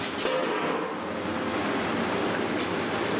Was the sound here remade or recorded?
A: recorded